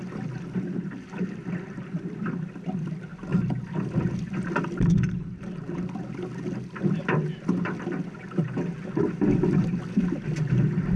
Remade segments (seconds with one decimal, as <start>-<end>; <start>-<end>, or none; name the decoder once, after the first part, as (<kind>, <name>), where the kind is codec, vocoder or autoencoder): none